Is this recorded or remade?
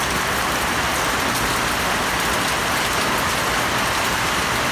recorded